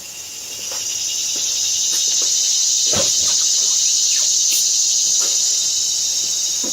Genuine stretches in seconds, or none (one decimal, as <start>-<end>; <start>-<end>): 0.0-6.7